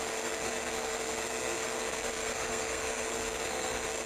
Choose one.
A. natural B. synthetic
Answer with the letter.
B